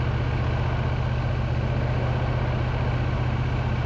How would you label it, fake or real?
real